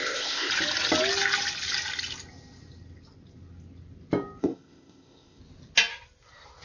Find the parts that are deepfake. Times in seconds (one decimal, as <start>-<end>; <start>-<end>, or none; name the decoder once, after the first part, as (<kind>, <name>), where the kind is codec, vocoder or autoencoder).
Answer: 0.0-0.5 (codec, ZipCodec); 4.4-5.4